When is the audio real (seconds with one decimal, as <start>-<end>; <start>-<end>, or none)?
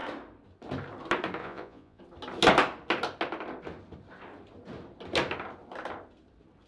0.0-1.4; 2.0-6.7